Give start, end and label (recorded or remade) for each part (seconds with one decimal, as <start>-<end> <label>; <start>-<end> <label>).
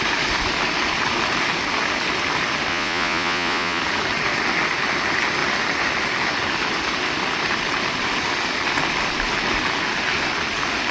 0.0-2.7 recorded; 2.7-3.8 remade; 3.8-10.9 recorded